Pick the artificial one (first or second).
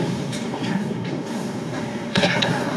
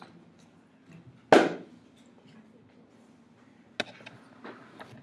first